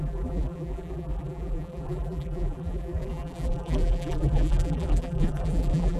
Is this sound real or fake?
fake